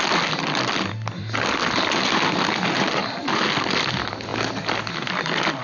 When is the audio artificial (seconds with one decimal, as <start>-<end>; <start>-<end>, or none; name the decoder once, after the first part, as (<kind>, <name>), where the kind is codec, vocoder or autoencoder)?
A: none